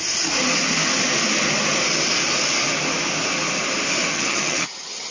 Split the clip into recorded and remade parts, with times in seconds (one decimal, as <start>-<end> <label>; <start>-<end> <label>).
0.0-4.1 recorded; 4.1-5.1 remade